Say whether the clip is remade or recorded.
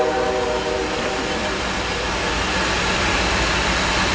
recorded